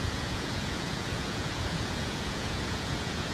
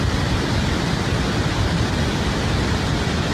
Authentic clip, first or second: second